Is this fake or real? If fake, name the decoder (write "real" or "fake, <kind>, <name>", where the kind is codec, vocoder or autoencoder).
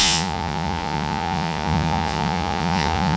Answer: fake, vocoder, Vocos